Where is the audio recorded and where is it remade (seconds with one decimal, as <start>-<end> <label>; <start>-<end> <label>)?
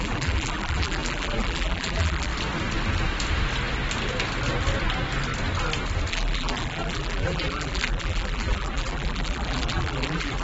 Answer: 0.0-2.3 remade; 2.3-6.1 recorded; 6.1-10.4 remade